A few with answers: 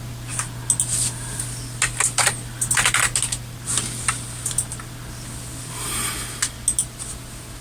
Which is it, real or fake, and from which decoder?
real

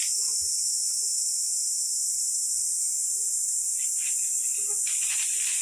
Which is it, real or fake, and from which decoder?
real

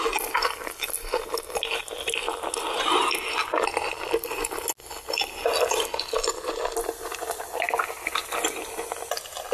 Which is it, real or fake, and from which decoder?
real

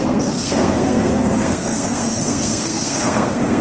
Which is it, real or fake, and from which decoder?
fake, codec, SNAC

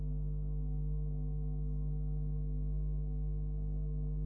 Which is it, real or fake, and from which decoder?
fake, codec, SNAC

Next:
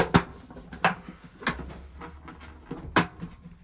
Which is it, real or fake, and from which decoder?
real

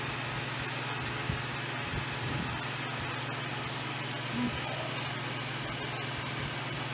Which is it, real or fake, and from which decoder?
real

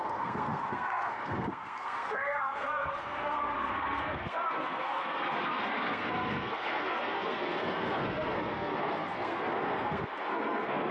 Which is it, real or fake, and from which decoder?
fake, codec, SNAC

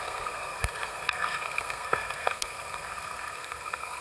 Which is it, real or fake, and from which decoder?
fake, codec, SNAC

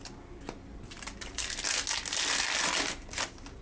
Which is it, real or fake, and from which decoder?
real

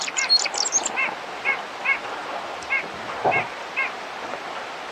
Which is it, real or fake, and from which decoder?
real